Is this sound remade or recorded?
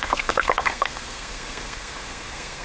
remade